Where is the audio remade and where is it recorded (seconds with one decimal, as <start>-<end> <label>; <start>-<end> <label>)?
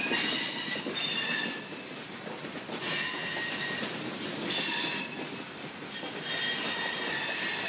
0.0-1.4 recorded; 1.4-2.8 remade; 2.8-3.2 recorded; 3.2-5.7 remade; 5.7-7.7 recorded